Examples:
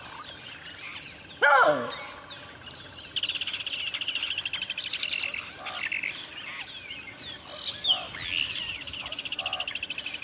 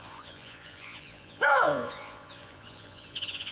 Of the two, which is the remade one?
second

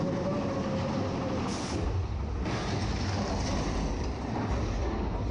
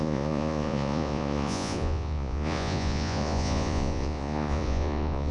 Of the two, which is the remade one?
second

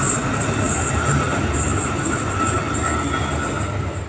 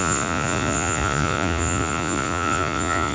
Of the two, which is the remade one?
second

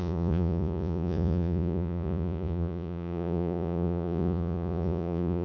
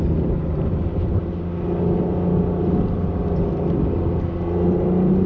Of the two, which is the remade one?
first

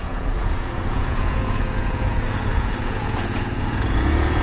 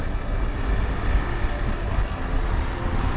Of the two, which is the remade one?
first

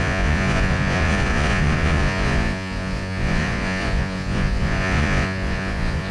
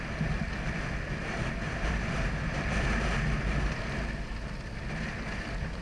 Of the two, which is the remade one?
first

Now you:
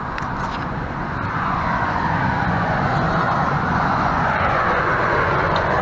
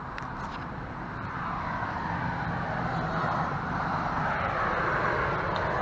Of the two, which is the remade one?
first